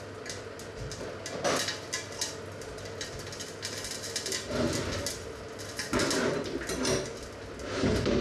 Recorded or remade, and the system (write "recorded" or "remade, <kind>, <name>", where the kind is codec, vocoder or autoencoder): recorded